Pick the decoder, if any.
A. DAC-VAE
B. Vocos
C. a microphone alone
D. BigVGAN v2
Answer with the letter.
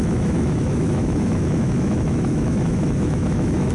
A